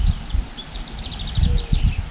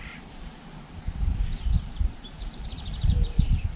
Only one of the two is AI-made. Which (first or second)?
second